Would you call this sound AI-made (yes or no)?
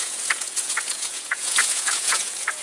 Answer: yes